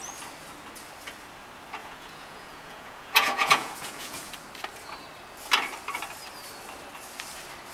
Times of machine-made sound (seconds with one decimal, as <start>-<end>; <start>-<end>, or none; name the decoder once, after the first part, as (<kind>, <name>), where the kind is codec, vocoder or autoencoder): 1.8-4.3 (vocoder, Vocos)